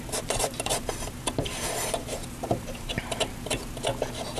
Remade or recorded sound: remade